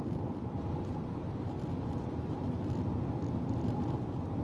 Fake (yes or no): no